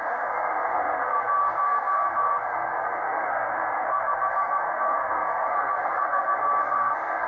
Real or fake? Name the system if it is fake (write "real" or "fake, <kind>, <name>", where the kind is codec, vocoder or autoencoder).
fake, codec, SNAC